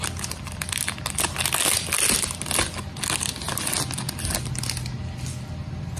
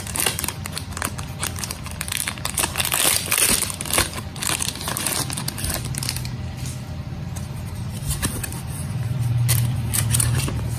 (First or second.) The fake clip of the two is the second